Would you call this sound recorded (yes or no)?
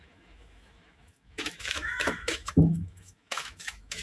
no